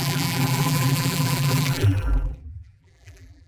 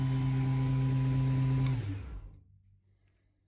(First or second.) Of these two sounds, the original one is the second